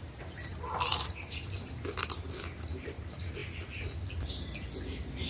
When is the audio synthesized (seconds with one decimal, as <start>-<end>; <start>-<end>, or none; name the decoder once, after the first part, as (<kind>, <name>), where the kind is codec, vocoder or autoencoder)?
0.5-1.2 (vocoder, BigVGAN v2)